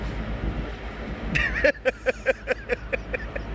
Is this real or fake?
real